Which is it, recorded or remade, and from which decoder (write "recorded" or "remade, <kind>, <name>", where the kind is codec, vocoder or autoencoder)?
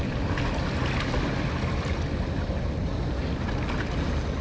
recorded